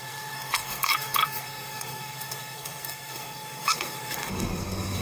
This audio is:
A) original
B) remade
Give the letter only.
B